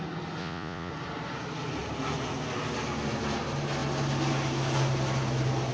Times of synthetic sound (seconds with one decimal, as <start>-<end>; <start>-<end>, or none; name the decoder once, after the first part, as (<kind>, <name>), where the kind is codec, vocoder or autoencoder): 0.4-0.9 (vocoder, Vocos)